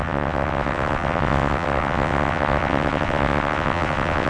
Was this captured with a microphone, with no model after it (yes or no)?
no